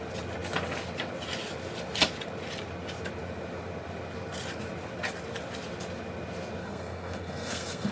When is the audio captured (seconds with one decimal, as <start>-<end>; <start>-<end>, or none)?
0.0-6.6